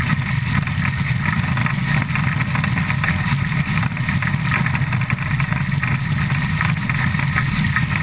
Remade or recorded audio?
recorded